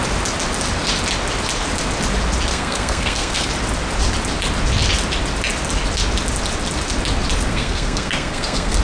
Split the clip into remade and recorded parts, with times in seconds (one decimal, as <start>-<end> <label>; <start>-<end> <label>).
0.0-2.5 recorded; 2.5-3.5 remade; 3.5-7.5 recorded; 7.5-8.8 remade